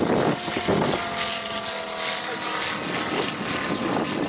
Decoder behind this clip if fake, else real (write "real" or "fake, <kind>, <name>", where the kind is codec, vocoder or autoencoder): real